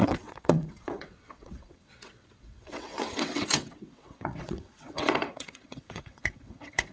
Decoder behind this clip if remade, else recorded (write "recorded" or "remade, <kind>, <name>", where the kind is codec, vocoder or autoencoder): remade, vocoder, WaveNeXt